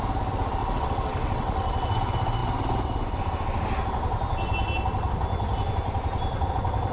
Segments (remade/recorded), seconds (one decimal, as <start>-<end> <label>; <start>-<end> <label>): 0.0-0.6 recorded; 0.6-1.9 remade; 1.9-6.9 recorded